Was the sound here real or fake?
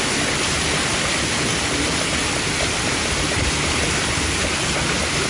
real